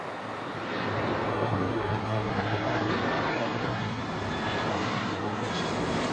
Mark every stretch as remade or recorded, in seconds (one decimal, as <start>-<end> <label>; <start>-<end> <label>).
0.0-1.3 recorded; 1.3-2.9 remade; 2.9-3.3 recorded; 3.3-4.0 remade; 4.0-4.7 recorded; 4.7-5.5 remade; 5.5-6.1 recorded

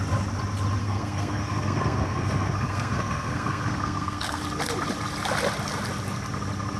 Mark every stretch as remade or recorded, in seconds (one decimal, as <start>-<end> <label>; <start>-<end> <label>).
0.0-0.8 recorded; 0.8-4.4 remade; 4.4-6.8 recorded